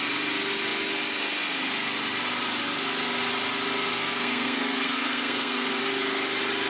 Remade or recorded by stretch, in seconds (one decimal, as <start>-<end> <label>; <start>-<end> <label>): 0.0-3.9 recorded; 3.9-5.8 remade; 5.8-6.7 recorded